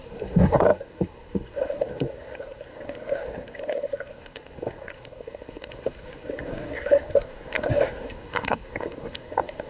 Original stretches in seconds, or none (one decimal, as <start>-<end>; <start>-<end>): none